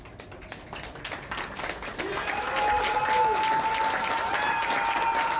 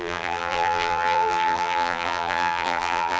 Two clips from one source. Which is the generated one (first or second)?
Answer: second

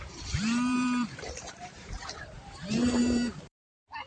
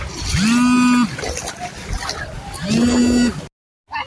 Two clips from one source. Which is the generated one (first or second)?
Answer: first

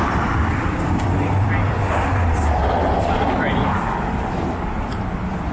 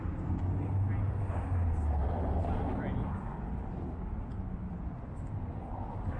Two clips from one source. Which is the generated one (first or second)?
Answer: first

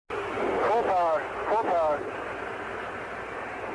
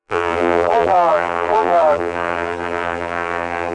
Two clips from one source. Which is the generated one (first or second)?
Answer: second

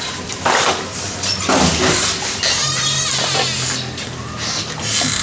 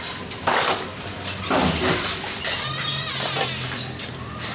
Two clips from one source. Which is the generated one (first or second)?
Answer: second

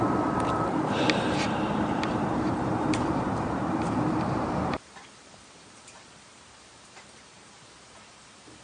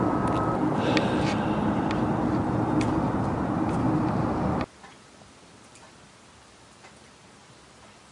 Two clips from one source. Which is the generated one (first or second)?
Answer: first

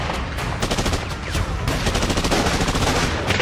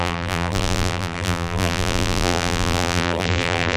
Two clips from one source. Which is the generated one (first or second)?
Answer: second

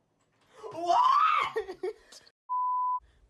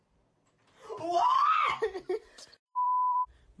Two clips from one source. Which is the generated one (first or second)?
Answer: second